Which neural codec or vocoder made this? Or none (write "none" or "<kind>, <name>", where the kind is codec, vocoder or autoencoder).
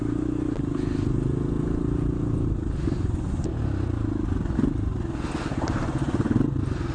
none